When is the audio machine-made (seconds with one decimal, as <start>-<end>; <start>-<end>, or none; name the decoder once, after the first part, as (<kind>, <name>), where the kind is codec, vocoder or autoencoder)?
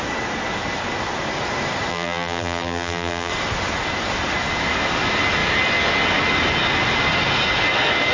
1.9-3.3 (vocoder, BigVGAN v2)